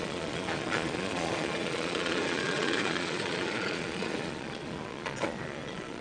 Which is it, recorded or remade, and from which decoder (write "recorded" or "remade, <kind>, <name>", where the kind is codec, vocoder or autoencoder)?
remade, vocoder, Vocos